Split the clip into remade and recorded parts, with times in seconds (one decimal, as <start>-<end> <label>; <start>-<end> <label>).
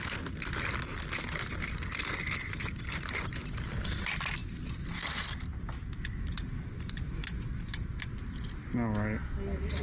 0.0-9.8 recorded